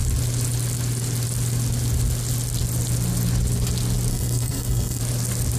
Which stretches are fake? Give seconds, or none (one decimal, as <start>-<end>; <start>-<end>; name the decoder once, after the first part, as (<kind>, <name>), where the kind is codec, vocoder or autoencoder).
4.1-5.0 (codec, SNAC)